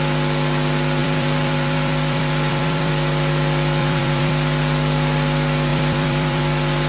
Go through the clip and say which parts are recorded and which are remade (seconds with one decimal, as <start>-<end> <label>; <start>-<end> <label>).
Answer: 0.0-1.0 recorded; 1.0-2.9 remade; 2.9-3.8 recorded; 3.8-4.3 remade; 4.3-5.7 recorded; 5.7-6.4 remade; 6.4-6.9 recorded